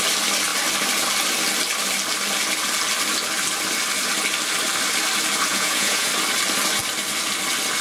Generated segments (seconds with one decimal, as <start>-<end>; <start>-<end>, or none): 5.5-6.1